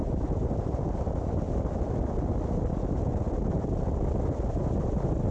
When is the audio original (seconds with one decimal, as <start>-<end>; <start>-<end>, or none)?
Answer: 0.0-5.3

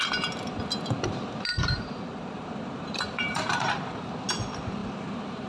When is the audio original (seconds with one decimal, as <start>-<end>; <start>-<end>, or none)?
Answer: 0.0-1.5; 4.3-4.8

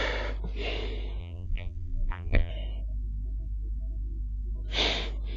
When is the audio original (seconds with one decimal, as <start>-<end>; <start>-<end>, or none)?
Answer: 0.0-1.2; 2.5-5.4